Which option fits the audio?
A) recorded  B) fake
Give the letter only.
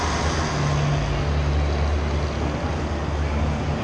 A